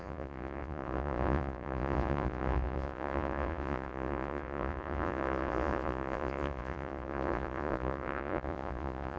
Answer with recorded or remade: remade